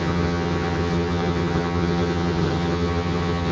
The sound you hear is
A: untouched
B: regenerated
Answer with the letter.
B